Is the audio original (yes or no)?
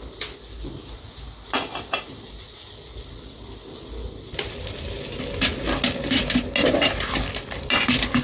yes